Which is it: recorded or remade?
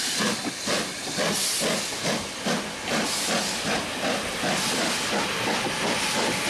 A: recorded